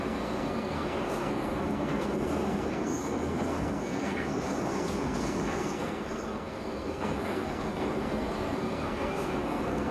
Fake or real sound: fake